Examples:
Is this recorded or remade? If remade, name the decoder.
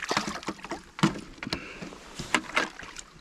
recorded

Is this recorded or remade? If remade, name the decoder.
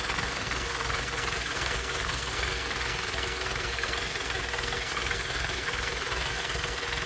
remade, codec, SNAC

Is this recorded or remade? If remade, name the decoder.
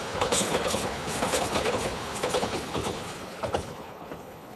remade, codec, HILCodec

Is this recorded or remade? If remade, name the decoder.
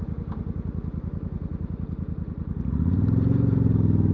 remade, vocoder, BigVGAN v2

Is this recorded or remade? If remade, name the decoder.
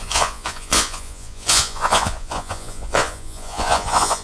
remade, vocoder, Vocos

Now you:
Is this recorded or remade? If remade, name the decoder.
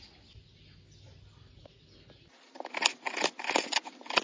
recorded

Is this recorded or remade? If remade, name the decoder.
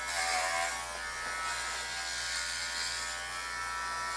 recorded